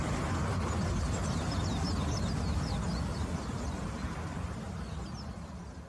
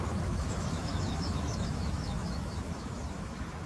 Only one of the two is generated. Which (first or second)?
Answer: second